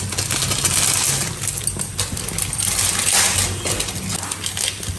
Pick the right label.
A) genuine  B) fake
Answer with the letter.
A